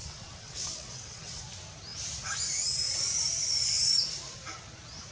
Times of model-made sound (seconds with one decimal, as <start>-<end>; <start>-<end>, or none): 0.0-1.4